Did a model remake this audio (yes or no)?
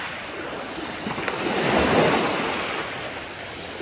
no